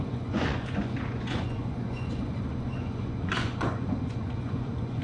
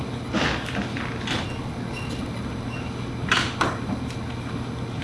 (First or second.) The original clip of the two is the second